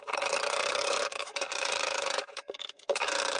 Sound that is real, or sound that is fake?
fake